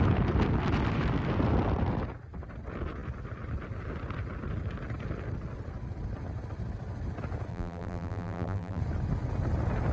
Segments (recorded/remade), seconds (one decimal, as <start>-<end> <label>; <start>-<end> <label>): 0.0-7.5 recorded; 7.5-8.8 remade; 8.8-9.9 recorded